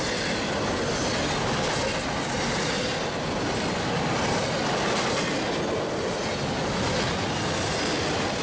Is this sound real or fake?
real